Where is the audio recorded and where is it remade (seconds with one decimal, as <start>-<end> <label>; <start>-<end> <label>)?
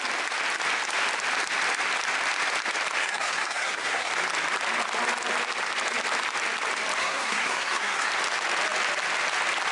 0.0-3.0 recorded; 3.0-4.1 remade; 4.1-7.0 recorded; 7.0-8.1 remade; 8.1-9.7 recorded